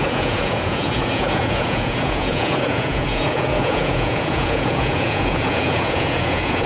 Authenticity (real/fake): fake